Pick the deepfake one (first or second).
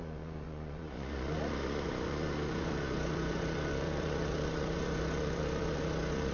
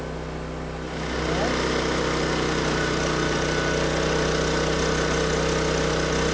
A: first